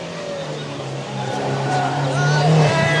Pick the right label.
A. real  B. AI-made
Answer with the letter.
A